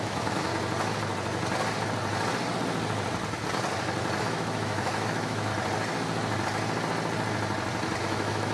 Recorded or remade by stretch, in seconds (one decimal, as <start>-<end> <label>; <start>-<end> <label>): 0.0-0.5 remade; 0.5-4.2 recorded; 4.2-5.5 remade; 5.5-8.0 recorded; 8.0-8.5 remade